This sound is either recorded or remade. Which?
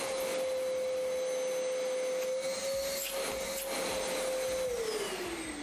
recorded